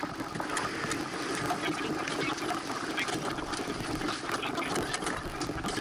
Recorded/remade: recorded